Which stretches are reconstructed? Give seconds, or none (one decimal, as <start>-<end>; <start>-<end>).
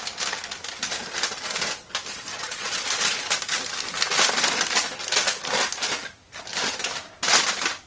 2.3-2.8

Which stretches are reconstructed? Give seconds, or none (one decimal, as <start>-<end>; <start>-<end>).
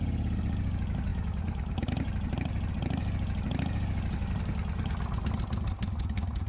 none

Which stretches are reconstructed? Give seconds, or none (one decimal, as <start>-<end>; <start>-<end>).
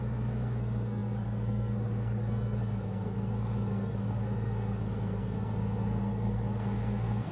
0.0-7.3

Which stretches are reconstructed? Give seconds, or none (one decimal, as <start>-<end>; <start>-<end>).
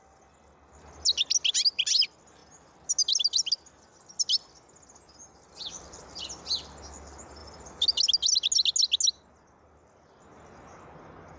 none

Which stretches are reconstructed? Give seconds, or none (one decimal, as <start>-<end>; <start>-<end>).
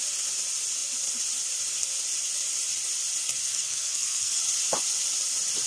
3.4-4.4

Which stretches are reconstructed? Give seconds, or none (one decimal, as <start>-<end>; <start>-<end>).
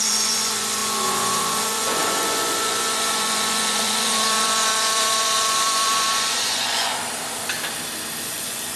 0.0-6.9; 8.2-8.8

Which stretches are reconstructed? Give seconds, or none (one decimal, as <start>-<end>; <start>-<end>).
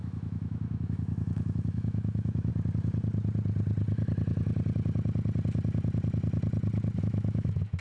0.0-2.5; 7.0-7.8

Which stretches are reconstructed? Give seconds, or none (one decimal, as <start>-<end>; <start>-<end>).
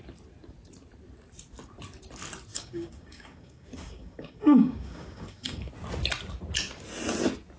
2.5-5.7